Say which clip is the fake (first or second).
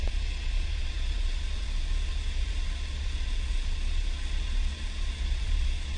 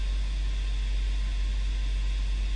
first